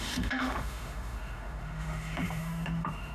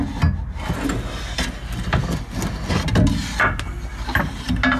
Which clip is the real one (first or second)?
second